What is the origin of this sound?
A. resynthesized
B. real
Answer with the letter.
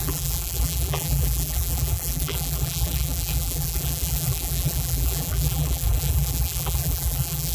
A